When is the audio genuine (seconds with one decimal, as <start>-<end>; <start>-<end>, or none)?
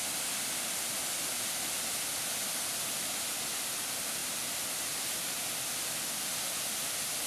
0.0-4.2; 5.4-7.3